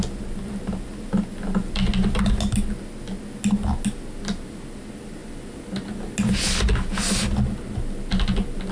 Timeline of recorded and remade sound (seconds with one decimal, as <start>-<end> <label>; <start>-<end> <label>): 0.0-8.7 recorded